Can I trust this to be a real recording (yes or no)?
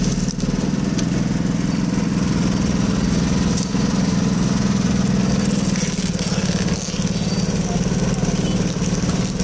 yes